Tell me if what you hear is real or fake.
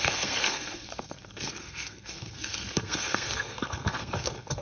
fake